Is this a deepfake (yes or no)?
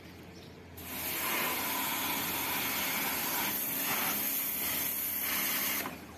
no